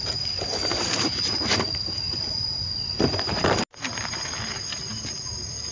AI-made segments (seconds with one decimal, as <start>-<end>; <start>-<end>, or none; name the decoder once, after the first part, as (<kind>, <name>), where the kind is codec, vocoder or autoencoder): 0.0-2.9 (vocoder, BigVGAN v2)